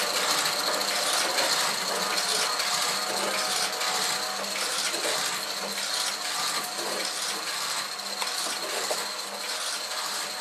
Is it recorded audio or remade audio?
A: recorded